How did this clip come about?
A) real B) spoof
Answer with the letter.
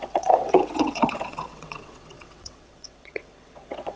B